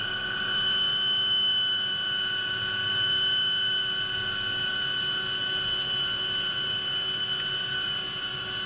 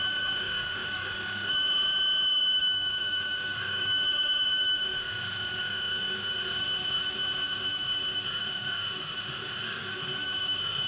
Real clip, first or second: first